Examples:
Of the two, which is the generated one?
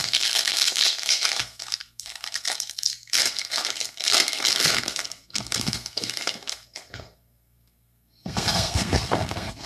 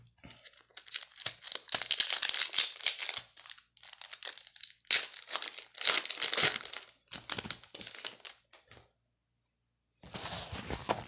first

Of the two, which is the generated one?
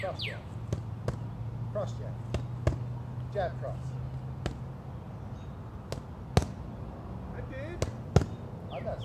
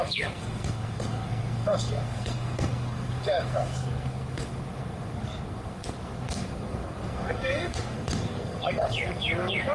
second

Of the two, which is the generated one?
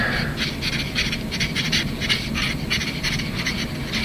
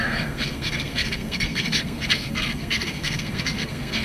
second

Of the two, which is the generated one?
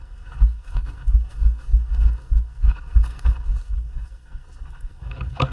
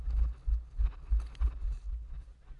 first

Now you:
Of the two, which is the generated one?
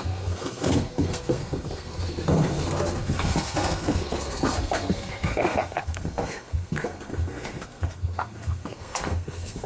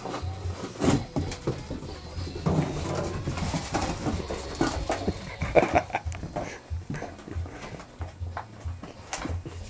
first